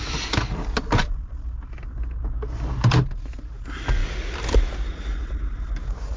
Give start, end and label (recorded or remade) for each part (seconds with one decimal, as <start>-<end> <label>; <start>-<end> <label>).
0.0-6.2 recorded